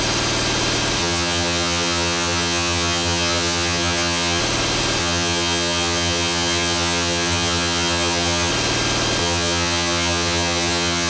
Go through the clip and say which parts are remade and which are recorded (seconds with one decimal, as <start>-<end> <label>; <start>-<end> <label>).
0.0-1.0 recorded; 1.0-4.4 remade; 4.4-5.0 recorded; 5.0-8.5 remade; 8.5-9.2 recorded; 9.2-11.1 remade